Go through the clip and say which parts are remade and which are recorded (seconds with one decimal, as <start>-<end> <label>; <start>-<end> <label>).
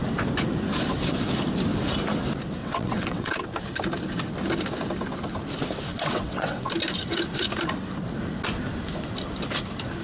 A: 0.0-2.6 recorded; 2.6-3.4 remade; 3.4-5.9 recorded; 5.9-6.7 remade; 6.7-10.0 recorded